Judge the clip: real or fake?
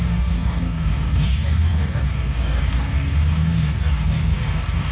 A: fake